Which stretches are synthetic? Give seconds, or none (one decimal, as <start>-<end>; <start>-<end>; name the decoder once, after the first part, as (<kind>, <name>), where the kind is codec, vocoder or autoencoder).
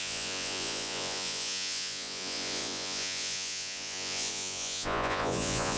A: 0.0-5.8 (vocoder, Vocos)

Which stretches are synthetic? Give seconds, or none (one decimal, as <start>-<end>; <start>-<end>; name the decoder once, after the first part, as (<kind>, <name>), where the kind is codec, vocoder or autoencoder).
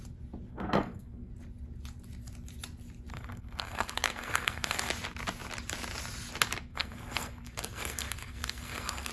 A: 0.5-1.3 (codec, SNAC); 3.1-4.9; 6.7-9.1